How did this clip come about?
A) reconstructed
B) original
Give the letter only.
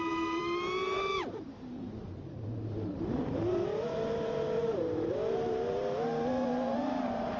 A